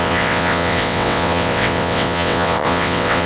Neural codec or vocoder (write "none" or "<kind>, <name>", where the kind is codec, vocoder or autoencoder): vocoder, WaveNeXt